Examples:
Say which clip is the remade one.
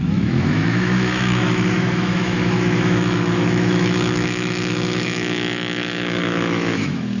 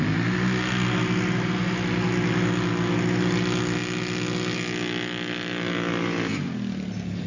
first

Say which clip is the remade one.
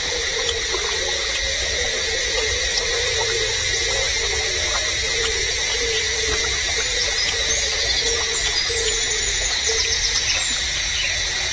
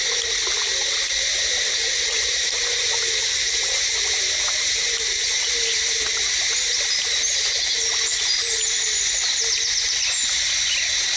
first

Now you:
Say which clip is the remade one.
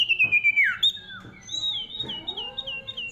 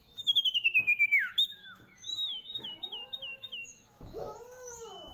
second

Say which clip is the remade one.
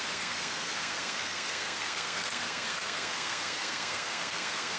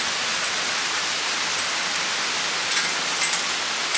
first